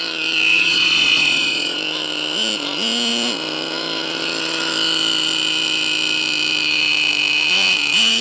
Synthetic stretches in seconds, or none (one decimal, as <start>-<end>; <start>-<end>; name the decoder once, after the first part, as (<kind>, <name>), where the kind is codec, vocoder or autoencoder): 0.5-1.8 (vocoder, Vocos)